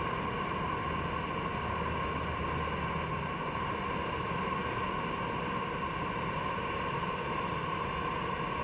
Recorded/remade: recorded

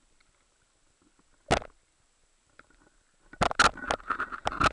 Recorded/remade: recorded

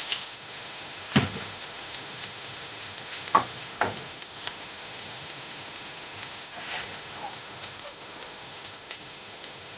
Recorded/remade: remade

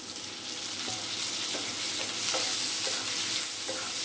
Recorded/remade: recorded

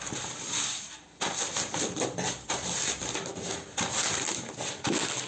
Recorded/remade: remade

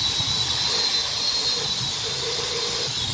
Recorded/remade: recorded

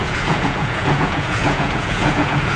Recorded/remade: remade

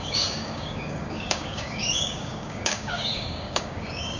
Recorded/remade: remade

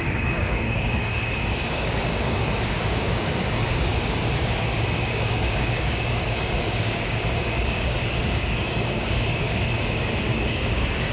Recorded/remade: remade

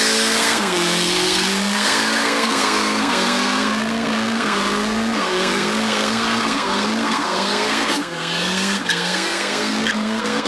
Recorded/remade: remade